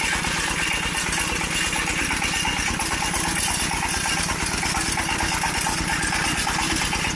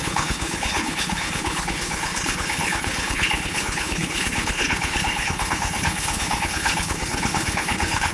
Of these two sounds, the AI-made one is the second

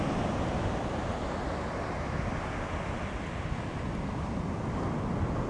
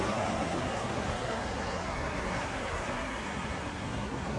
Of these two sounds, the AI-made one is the second